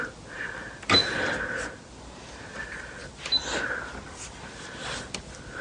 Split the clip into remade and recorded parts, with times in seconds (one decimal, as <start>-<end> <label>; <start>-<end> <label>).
0.0-5.6 recorded